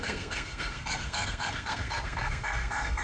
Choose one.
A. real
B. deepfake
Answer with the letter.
B